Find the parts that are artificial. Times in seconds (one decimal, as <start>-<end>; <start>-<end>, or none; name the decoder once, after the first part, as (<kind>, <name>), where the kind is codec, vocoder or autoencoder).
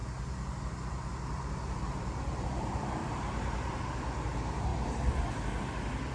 0.0-4.7 (vocoder, BigVGAN v2)